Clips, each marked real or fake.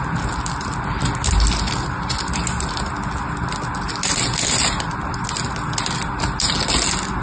real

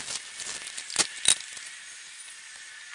real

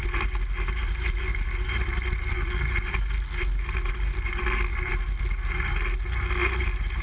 real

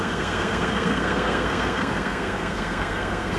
fake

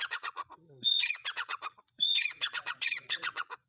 fake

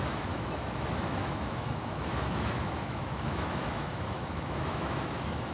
fake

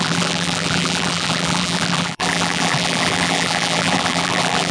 fake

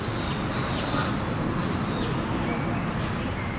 real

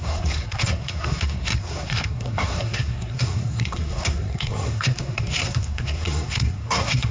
fake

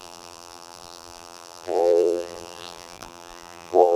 fake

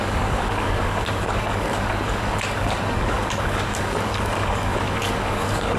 fake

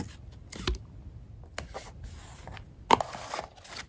real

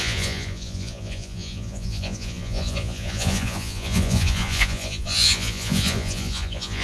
fake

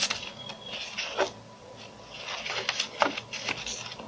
real